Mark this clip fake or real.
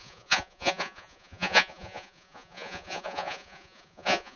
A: fake